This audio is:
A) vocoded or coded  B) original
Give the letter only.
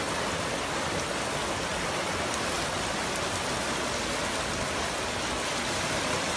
B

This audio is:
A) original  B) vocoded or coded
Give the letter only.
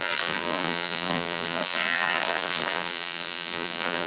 B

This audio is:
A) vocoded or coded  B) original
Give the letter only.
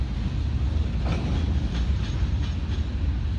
B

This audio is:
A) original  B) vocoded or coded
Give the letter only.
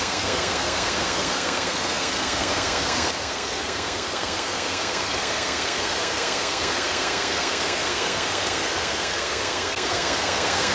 B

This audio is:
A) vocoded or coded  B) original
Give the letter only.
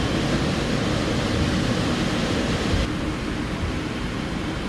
B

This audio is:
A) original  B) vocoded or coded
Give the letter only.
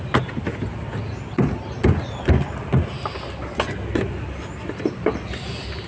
A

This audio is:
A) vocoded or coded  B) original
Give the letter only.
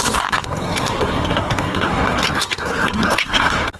A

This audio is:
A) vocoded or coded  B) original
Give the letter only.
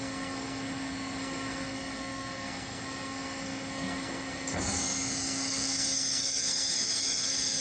A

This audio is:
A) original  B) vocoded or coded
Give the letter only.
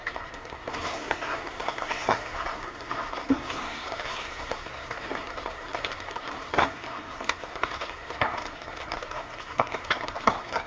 B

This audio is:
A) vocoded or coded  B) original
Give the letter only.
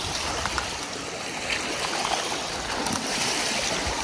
B